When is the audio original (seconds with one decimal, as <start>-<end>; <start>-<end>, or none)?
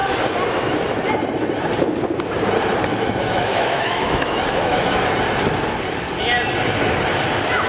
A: 0.0-2.9; 5.1-7.7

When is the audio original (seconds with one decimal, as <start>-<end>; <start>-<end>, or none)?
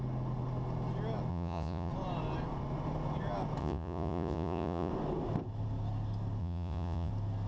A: 0.0-1.3; 1.9-3.6; 4.9-6.4; 7.1-7.5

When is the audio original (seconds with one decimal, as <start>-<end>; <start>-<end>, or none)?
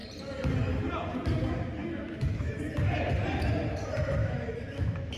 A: 0.0-1.8; 2.6-4.2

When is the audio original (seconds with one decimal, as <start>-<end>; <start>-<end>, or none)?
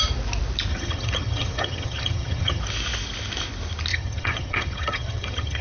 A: 0.0-0.7; 2.6-3.9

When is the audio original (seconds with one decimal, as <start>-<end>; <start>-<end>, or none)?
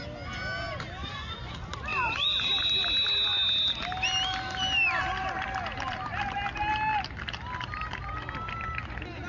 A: 0.0-1.0; 1.5-9.3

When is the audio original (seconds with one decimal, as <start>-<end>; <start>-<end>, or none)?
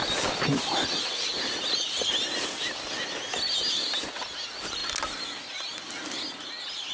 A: 0.0-6.9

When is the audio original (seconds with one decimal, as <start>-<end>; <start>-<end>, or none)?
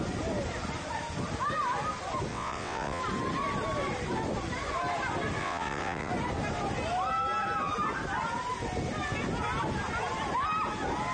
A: 0.0-2.3; 3.0-5.4; 6.1-11.1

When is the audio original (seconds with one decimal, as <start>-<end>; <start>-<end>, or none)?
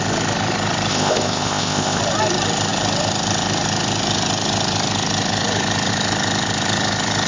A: 0.0-0.9; 2.0-7.3